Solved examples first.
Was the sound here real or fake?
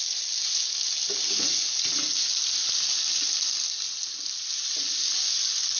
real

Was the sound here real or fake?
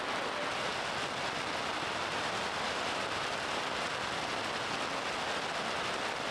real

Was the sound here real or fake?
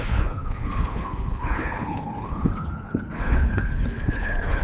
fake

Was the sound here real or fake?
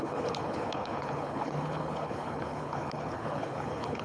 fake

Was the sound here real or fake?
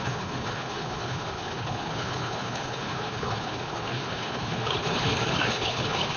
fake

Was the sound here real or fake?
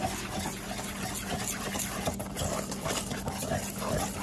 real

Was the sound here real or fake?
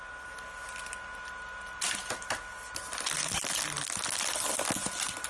real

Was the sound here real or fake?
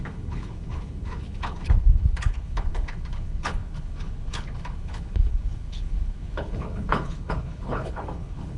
fake